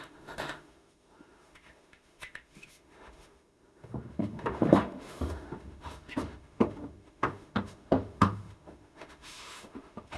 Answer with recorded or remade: remade